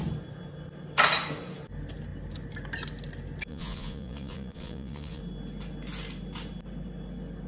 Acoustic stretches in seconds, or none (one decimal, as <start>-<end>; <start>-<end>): 0.0-3.5; 5.2-7.5